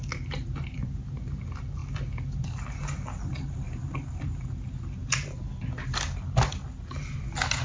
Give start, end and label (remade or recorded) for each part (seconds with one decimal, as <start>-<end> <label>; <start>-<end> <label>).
0.0-7.6 recorded